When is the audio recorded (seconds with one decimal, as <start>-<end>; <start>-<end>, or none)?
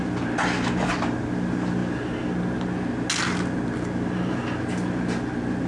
0.0-5.7